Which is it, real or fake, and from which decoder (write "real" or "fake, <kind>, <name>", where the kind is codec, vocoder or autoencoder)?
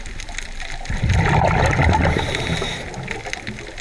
real